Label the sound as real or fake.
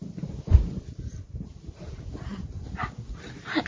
real